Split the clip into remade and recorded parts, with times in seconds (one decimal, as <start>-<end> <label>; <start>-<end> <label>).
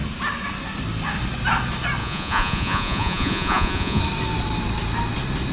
0.0-2.0 recorded; 2.0-4.0 remade; 4.0-5.5 recorded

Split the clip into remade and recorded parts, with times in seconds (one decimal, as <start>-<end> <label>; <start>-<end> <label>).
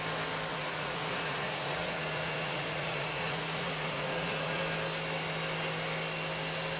0.0-0.5 recorded; 0.5-4.6 remade; 4.6-6.8 recorded